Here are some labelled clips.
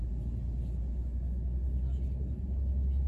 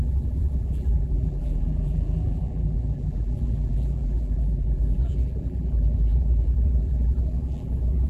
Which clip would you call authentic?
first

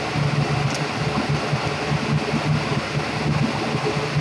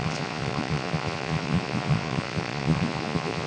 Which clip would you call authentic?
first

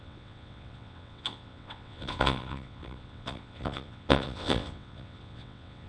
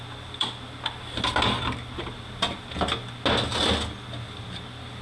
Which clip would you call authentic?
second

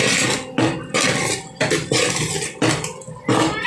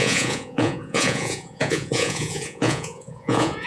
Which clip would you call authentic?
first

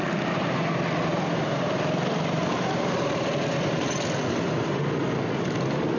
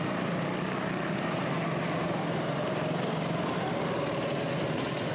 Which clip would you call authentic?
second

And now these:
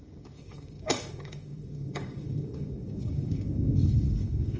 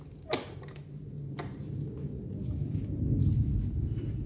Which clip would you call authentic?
second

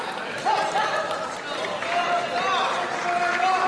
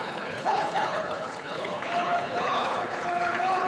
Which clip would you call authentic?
first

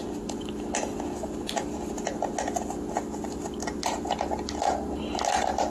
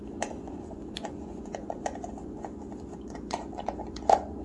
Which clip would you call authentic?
first